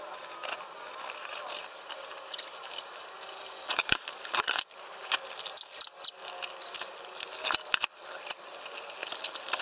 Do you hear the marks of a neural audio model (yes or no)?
no